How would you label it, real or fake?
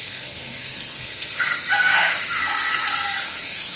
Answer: fake